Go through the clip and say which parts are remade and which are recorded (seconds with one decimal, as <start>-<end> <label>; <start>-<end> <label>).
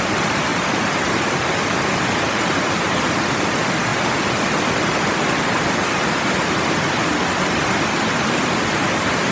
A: 0.0-0.5 remade; 0.5-1.4 recorded; 1.4-3.9 remade; 3.9-7.7 recorded; 7.7-9.3 remade